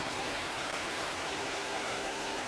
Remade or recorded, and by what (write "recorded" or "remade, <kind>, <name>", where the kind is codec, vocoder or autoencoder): remade, codec, SNAC